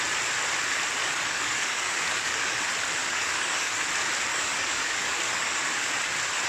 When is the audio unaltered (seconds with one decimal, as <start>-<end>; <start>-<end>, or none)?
0.0-1.0; 2.6-3.0; 3.8-4.3; 5.9-6.5